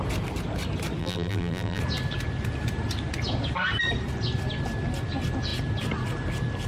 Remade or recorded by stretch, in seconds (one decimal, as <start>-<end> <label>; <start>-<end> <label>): 0.0-1.0 recorded; 1.0-1.8 remade; 1.8-6.7 recorded